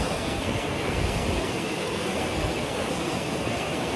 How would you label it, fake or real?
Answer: fake